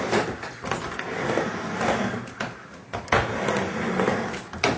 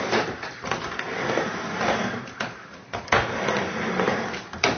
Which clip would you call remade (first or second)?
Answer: second